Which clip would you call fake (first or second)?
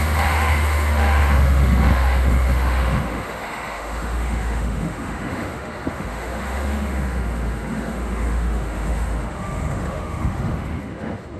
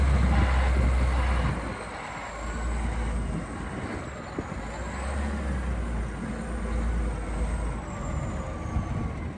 first